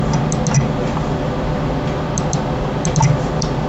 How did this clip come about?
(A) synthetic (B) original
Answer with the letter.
B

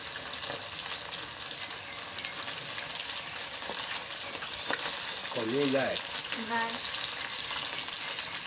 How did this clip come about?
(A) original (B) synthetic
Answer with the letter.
A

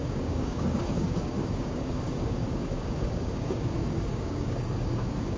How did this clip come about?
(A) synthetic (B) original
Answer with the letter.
A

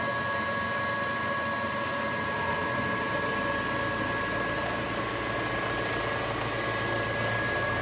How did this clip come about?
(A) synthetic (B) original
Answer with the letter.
B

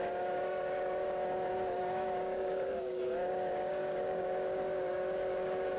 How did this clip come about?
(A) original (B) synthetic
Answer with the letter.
B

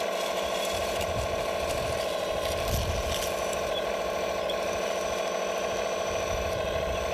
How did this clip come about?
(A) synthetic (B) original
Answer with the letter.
B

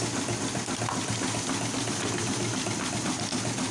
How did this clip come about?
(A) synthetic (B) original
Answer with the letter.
B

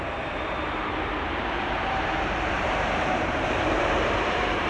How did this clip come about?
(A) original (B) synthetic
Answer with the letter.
B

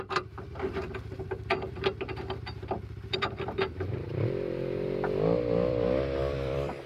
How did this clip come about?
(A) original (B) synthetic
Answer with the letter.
B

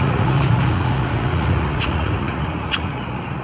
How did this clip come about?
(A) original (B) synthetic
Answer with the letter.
B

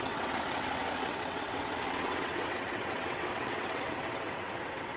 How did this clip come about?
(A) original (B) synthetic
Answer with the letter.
B